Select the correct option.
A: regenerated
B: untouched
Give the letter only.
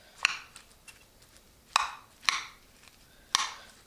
B